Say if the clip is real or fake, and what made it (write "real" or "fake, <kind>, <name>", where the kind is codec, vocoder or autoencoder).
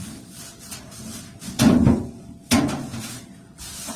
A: real